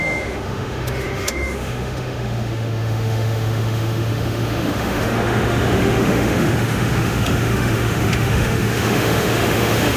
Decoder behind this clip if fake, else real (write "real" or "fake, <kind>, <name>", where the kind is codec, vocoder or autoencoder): fake, autoencoder, DAC-VAE